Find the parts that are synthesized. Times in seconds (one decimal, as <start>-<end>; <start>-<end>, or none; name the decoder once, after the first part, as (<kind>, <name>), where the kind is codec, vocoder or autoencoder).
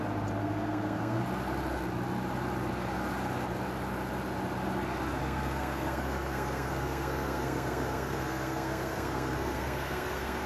0.4-1.2 (codec, SNAC); 5.2-10.5